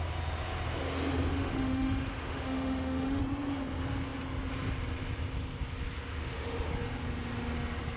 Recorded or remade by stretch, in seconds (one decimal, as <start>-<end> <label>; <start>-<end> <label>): 0.0-1.3 recorded; 1.3-3.2 remade; 3.2-6.2 recorded; 6.2-6.7 remade; 6.7-8.0 recorded